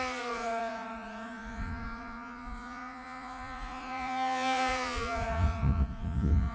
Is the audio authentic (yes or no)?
no